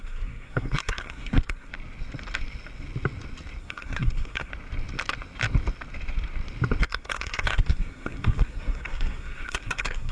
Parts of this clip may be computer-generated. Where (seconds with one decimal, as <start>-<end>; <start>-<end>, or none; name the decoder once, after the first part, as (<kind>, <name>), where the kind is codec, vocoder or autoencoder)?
0.0-1.7 (codec, SNAC); 3.6-4.5; 6.8-10.1